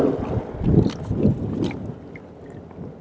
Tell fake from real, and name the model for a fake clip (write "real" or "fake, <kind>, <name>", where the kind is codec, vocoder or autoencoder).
real